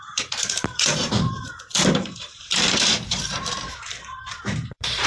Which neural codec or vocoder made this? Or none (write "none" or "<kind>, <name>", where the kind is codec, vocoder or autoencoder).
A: vocoder, BigVGAN v2